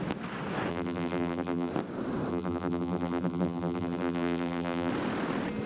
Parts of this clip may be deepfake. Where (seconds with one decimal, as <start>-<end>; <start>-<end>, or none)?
0.7-1.7; 2.3-4.9